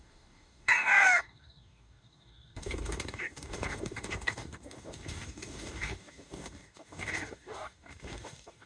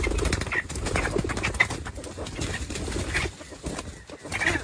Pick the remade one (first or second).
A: first